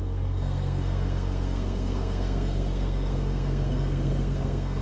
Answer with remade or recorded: remade